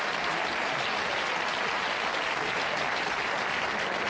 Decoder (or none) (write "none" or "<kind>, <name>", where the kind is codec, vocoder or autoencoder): none